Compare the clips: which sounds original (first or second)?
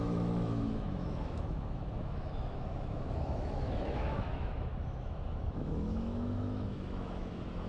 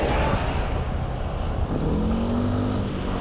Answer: second